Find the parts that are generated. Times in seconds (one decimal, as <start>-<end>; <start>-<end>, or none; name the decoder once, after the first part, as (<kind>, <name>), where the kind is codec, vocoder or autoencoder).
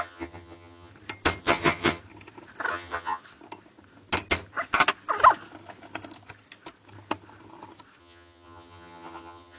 0.0-0.9 (vocoder, HiFi-GAN); 1.4-2.0; 2.7-3.2; 8.0-9.6